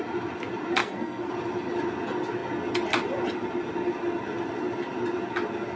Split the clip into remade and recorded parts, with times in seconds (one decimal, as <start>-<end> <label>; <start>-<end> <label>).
0.0-0.8 recorded; 0.8-1.3 remade; 1.3-5.8 recorded